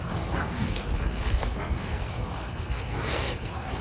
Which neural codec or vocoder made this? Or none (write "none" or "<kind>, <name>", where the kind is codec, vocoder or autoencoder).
codec, SNAC